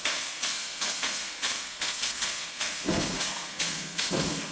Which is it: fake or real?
fake